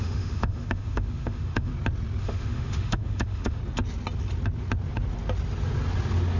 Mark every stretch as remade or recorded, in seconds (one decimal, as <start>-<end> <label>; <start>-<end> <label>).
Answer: 0.0-1.7 remade; 1.7-2.2 recorded; 2.2-3.6 remade; 3.6-6.4 recorded